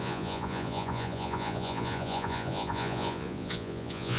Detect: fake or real fake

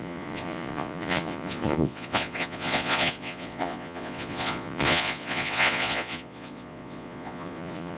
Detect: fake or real fake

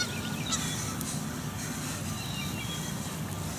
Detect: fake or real real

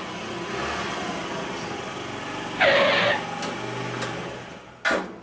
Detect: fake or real real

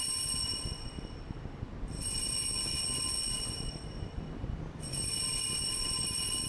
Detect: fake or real real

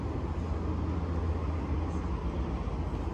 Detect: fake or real real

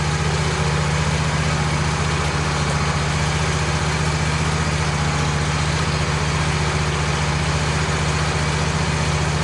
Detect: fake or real real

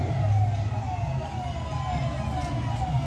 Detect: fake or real real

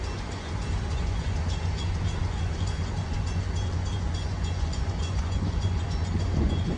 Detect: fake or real fake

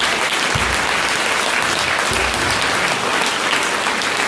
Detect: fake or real real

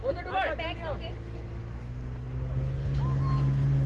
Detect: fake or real real